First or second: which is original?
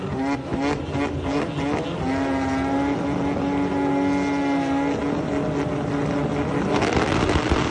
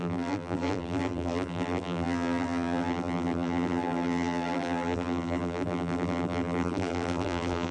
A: first